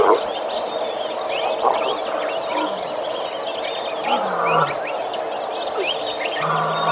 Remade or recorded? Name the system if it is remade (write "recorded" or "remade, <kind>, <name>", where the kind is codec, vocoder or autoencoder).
recorded